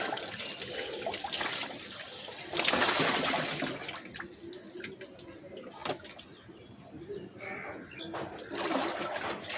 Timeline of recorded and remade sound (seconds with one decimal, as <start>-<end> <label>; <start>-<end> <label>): 0.0-2.8 recorded; 2.8-3.3 remade; 3.3-9.6 recorded